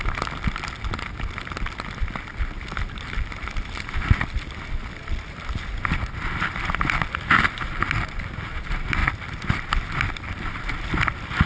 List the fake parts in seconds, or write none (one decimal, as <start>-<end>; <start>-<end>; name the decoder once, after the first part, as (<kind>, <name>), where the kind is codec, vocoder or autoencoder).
none